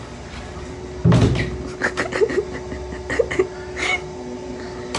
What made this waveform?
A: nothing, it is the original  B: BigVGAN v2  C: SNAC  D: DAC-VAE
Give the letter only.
A